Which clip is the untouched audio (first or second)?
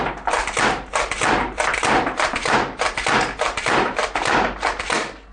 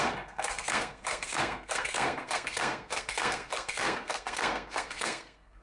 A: first